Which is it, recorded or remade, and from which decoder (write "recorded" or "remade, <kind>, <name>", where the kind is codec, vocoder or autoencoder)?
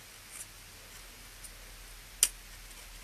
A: recorded